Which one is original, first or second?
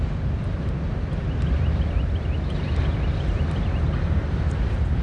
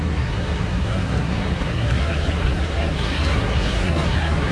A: first